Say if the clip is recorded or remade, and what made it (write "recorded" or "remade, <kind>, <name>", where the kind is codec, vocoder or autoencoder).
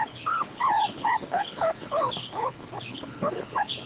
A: remade, codec, HILCodec